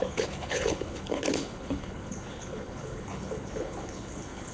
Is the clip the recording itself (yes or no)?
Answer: no